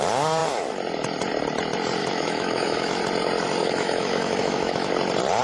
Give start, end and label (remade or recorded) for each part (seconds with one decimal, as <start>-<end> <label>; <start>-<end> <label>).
0.0-2.0 recorded; 2.0-3.0 remade; 3.0-3.6 recorded; 3.6-4.9 remade; 4.9-5.4 recorded